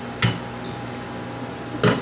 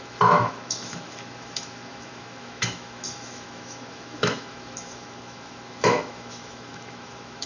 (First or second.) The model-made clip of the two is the second